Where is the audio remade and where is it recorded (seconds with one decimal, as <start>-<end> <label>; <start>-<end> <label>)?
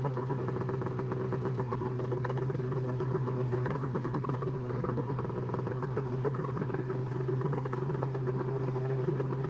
0.0-0.4 remade; 0.4-1.6 recorded; 1.6-5.2 remade; 5.2-5.7 recorded; 5.7-9.5 remade